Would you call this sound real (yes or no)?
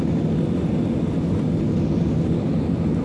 yes